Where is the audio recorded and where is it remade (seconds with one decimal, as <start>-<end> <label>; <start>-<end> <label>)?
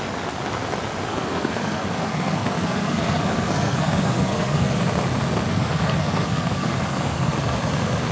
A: 0.0-1.1 recorded; 1.1-4.8 remade; 4.8-5.5 recorded; 5.5-7.3 remade; 7.3-8.1 recorded